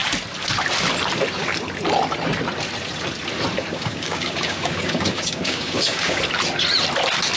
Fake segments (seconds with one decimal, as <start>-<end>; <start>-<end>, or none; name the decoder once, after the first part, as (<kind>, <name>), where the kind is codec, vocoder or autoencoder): 3.7-6.2 (codec, DAC)